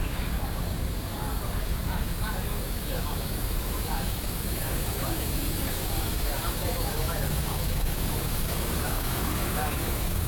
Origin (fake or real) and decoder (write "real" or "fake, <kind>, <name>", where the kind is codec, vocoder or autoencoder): fake, codec, DAC